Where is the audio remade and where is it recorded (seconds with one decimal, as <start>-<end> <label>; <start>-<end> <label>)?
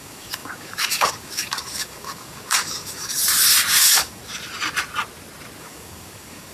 0.0-3.2 remade; 3.2-3.8 recorded; 3.8-4.2 remade; 4.2-5.6 recorded; 5.6-6.5 remade